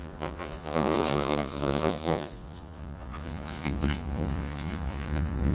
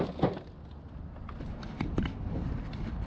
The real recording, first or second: second